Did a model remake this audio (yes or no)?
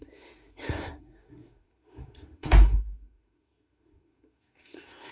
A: yes